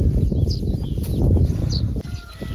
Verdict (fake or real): real